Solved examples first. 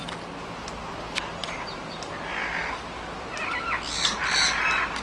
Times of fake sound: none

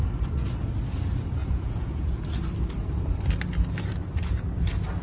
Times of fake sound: 1.4-2.2 (vocoder, Vocos)

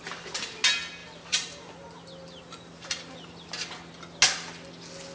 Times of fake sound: 1.0-1.7 (vocoder, BigVGAN v2)

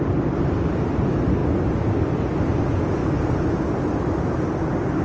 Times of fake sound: none

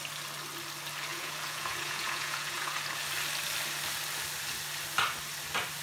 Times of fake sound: 1.1-2.8 (vocoder, Vocos)

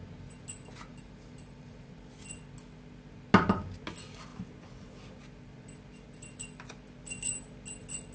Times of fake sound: 0.9-1.9 (vocoder, BigVGAN v2)